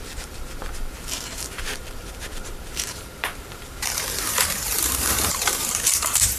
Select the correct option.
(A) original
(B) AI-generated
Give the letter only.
B